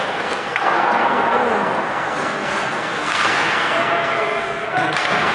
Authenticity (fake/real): fake